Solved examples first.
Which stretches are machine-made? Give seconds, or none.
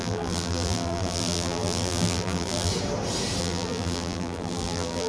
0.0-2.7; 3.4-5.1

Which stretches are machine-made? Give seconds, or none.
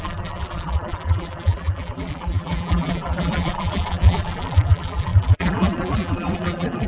0.0-6.9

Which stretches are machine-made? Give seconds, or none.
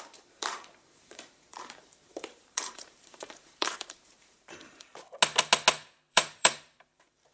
0.0-4.9; 6.1-7.3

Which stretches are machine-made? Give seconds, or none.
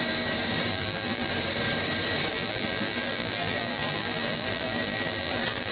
0.7-1.3; 2.3-5.7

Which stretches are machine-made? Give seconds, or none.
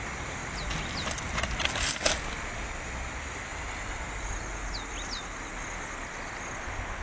3.5-4.0